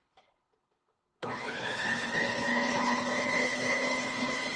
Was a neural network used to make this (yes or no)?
yes